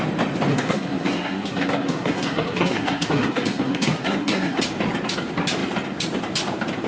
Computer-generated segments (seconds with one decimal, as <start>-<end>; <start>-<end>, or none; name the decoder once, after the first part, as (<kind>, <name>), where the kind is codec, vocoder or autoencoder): 0.5-4.6 (codec, SNAC)